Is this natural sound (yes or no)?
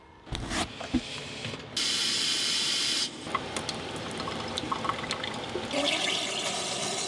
yes